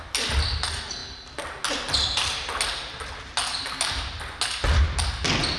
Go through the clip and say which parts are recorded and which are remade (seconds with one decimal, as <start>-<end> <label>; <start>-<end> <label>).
0.0-5.6 recorded